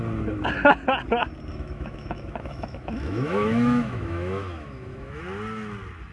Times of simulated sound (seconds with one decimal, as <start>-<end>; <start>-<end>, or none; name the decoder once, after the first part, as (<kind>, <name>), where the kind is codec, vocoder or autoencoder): 1.5-5.2 (autoencoder, DAC-VAE)